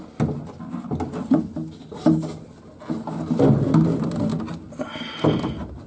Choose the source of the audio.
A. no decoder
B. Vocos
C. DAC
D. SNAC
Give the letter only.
A